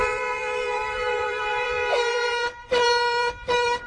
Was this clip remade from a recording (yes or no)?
yes